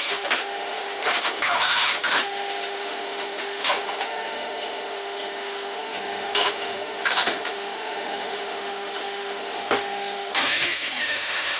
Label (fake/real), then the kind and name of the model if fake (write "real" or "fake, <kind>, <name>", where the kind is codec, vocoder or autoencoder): fake, autoencoder, DAC-VAE